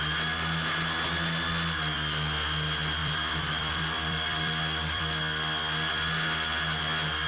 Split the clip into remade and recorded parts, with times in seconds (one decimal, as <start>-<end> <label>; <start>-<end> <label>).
0.0-3.0 recorded; 3.0-5.0 remade; 5.0-7.3 recorded